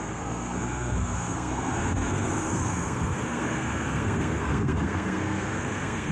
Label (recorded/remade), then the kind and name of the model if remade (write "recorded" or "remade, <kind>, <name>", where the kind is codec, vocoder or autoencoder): remade, codec, SNAC